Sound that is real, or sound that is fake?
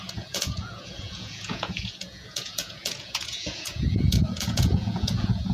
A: fake